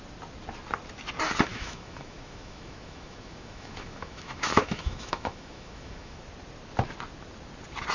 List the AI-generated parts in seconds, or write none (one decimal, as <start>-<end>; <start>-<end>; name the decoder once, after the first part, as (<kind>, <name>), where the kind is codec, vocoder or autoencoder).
1.5-6.2 (autoencoder, DAC-VAE)